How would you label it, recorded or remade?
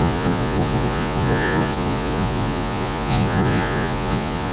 remade